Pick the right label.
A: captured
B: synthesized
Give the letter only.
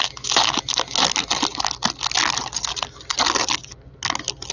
A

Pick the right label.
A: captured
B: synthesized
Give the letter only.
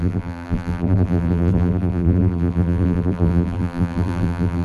B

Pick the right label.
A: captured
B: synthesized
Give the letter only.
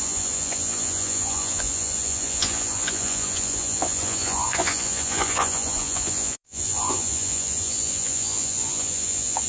B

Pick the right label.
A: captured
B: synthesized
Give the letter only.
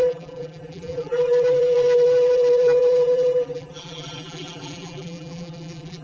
B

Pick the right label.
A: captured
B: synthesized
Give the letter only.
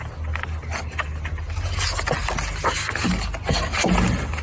A